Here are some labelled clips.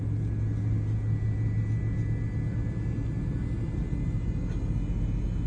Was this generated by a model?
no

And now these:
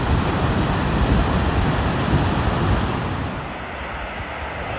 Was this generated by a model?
no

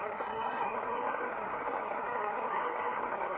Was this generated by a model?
yes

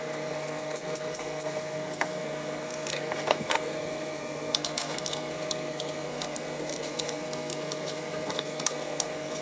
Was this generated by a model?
yes